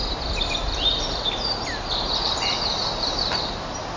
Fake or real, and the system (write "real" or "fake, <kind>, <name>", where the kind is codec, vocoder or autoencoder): real